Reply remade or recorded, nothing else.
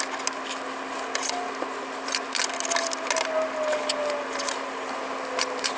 recorded